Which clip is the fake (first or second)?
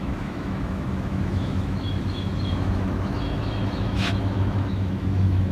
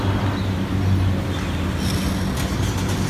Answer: first